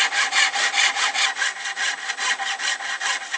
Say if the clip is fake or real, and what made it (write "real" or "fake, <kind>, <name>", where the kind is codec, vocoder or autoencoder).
real